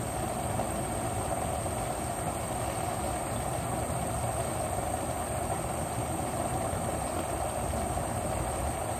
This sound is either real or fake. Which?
real